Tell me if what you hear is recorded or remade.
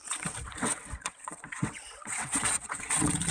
remade